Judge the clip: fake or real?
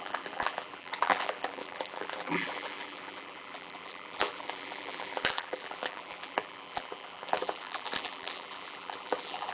fake